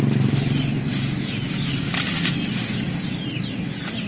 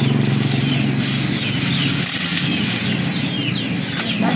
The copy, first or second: first